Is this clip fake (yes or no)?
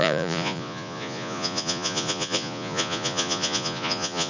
yes